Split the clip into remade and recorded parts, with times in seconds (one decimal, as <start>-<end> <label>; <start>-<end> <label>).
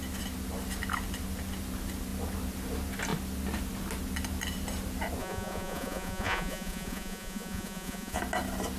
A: 0.0-5.2 recorded; 5.2-8.2 remade; 8.2-8.8 recorded